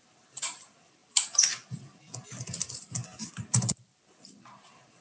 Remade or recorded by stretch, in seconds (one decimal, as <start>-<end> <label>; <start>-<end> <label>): 0.0-1.0 remade; 1.0-3.3 recorded; 3.3-5.0 remade